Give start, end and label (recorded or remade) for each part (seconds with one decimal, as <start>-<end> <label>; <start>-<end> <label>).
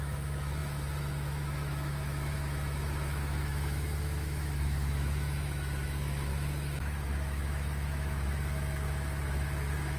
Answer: 0.0-10.0 remade